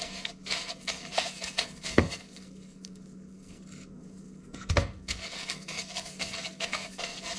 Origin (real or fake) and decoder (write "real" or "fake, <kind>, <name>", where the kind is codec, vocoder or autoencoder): fake, codec, SNAC